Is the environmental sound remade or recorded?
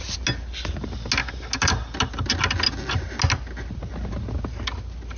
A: recorded